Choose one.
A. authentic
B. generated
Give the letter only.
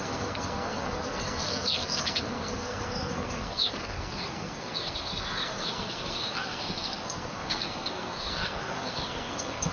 B